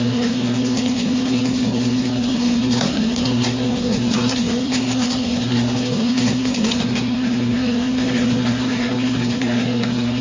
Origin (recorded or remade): remade